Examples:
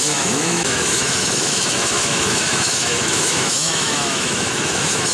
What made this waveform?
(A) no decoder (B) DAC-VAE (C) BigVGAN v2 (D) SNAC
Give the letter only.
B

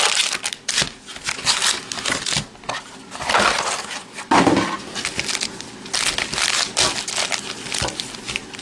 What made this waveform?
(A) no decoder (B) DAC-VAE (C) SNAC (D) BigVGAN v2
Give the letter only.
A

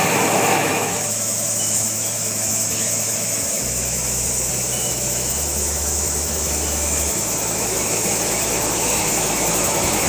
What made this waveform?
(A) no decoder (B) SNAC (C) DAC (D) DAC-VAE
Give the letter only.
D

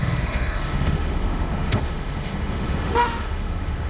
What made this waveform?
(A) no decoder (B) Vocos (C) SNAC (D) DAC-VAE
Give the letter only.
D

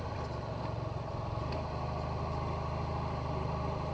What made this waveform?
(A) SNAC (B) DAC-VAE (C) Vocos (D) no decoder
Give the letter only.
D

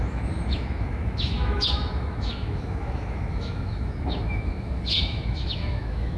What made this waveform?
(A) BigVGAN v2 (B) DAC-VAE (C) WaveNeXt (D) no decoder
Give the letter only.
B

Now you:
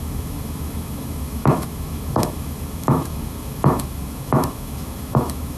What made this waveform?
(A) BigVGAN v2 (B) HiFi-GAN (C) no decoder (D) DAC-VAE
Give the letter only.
D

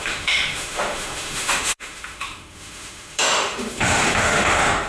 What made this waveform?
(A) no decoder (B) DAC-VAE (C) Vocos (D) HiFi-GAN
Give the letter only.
B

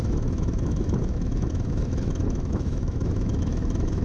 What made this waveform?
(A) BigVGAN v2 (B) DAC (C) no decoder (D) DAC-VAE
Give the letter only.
D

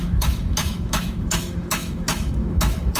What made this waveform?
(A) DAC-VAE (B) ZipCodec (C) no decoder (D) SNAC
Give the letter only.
A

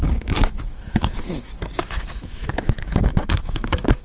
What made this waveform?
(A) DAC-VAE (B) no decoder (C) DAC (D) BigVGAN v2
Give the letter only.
A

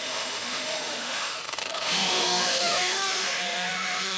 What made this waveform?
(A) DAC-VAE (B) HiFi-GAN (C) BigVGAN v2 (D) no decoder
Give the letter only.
A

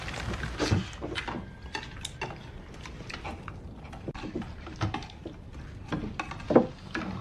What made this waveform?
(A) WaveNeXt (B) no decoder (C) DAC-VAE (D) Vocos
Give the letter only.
B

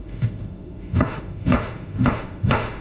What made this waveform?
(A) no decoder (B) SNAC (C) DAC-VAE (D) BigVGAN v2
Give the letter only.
C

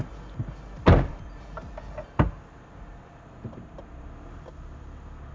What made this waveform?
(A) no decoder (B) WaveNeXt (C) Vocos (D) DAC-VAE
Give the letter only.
A